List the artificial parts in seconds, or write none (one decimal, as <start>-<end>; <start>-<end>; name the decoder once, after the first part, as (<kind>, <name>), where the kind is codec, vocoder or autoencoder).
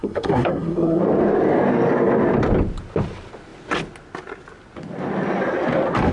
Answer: 0.0-1.0 (codec, SNAC)